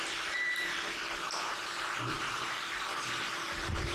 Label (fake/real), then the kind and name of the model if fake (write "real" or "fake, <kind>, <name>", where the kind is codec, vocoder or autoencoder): fake, vocoder, BigVGAN v2